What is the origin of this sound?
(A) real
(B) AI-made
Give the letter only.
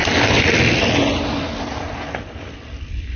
A